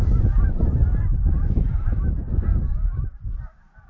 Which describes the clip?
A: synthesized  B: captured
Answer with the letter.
B